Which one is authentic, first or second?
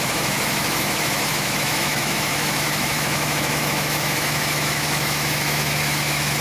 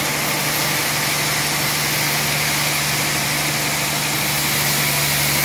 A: second